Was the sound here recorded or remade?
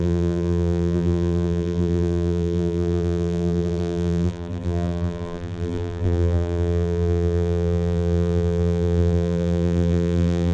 remade